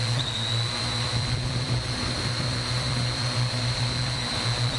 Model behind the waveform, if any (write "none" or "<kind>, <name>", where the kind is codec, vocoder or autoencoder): vocoder, BigVGAN v2